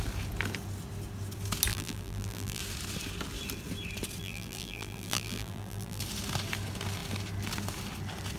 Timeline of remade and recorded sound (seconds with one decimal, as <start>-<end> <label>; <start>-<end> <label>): 0.0-1.7 recorded; 1.7-2.6 remade; 2.6-4.2 recorded; 4.2-6.0 remade; 6.0-8.4 recorded